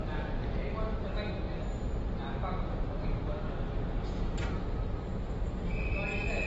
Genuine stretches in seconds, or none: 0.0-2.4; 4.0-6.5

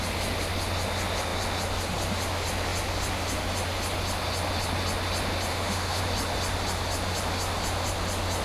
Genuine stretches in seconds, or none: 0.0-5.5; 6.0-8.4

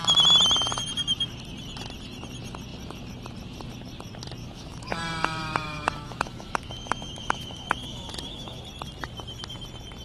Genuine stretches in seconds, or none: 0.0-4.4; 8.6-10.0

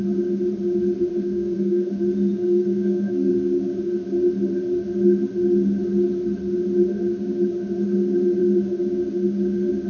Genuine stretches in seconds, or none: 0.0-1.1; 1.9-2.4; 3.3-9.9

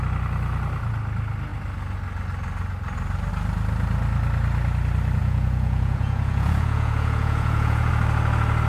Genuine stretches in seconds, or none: 0.0-5.2; 7.9-8.7

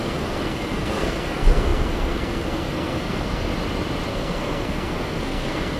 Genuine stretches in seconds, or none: 3.5-4.1